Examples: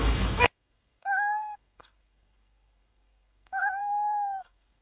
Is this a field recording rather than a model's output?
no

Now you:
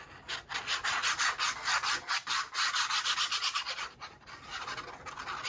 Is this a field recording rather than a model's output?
yes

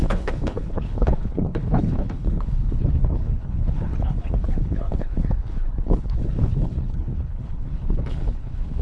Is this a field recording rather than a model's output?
no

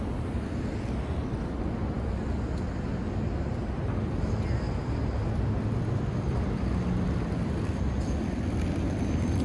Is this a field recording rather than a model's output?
yes